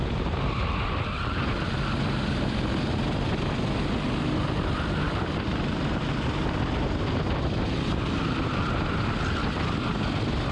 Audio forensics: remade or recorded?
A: recorded